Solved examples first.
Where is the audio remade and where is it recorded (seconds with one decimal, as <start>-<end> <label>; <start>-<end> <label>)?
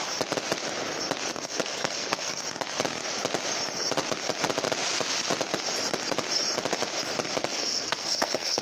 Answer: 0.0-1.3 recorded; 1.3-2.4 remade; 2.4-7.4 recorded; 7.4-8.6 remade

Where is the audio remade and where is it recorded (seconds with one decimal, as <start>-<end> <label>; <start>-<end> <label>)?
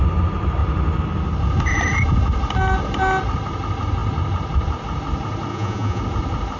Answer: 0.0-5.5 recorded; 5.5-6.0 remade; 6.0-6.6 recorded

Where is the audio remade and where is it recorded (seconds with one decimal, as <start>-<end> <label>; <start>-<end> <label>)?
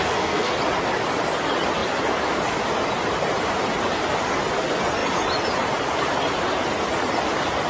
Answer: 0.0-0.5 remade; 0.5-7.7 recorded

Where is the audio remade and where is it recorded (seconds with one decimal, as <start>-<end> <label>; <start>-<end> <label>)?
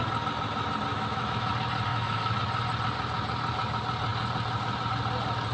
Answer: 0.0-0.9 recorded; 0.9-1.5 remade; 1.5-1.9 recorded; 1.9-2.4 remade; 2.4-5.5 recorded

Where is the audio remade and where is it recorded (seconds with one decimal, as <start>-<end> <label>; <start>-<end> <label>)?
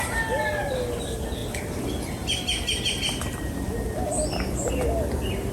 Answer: 0.0-5.5 recorded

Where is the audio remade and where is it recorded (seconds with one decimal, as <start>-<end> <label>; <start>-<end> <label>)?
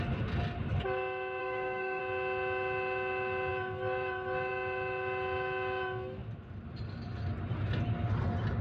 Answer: 0.0-1.4 recorded; 1.4-2.0 remade; 2.0-8.6 recorded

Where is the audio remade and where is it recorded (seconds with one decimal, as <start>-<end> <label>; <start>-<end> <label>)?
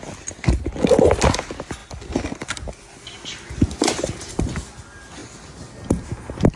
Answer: 0.0-6.6 recorded